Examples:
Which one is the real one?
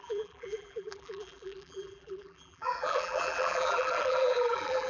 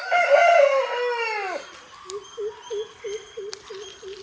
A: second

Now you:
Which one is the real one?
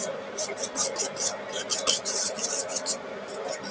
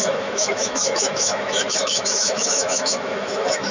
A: first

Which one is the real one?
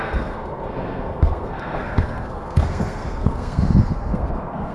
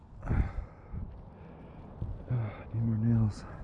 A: second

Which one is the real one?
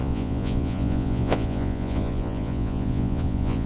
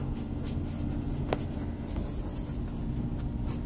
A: second